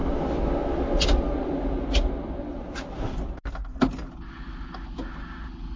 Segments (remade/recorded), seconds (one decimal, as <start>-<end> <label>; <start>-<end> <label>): 0.0-5.8 recorded